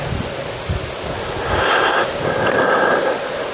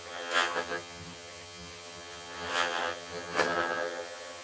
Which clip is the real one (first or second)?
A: first